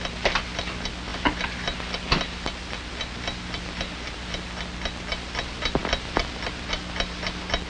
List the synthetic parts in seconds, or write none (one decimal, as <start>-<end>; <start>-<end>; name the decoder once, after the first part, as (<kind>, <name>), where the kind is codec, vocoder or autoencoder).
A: none